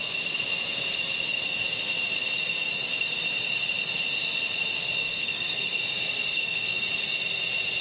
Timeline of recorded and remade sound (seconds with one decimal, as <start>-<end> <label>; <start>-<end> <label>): 0.0-5.0 recorded; 5.0-5.8 remade; 5.8-6.3 recorded; 6.3-6.8 remade; 6.8-7.8 recorded